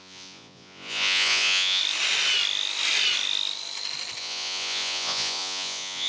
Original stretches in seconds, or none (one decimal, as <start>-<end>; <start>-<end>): 1.8-4.2